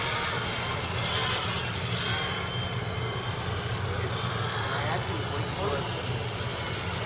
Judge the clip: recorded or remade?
recorded